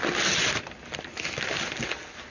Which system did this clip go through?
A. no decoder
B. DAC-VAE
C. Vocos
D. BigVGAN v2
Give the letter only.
A